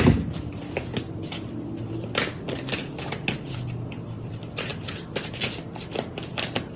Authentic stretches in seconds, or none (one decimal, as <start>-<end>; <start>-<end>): 0.0-6.8